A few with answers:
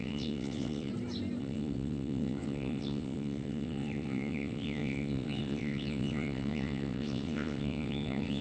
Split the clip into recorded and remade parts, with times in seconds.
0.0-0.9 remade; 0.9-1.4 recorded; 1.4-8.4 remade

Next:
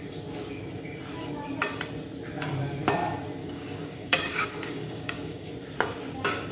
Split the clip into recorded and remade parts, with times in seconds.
0.0-3.4 recorded; 3.4-5.5 remade; 5.5-6.5 recorded

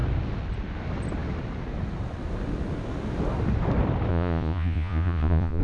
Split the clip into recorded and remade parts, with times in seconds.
0.0-4.1 recorded; 4.1-5.6 remade

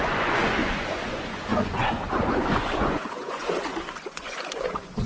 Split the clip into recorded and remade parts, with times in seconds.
0.0-5.1 remade

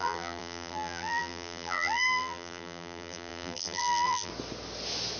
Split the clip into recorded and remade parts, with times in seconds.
0.0-4.3 remade; 4.3-5.2 recorded

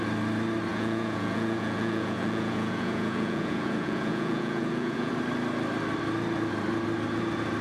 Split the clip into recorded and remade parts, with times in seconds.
0.0-0.7 recorded; 0.7-5.1 remade; 5.1-7.6 recorded

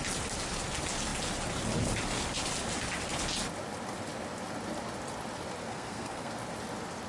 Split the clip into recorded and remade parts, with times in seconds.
0.0-5.6 recorded; 5.6-6.3 remade; 6.3-7.1 recorded

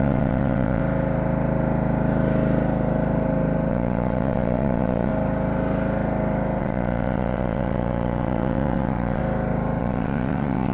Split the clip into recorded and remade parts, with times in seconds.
0.0-0.8 remade; 0.8-3.7 recorded; 3.7-5.1 remade; 5.1-6.6 recorded; 6.6-9.2 remade; 9.2-9.8 recorded; 9.8-10.7 remade